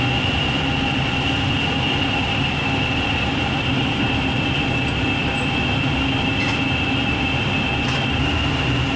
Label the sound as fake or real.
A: real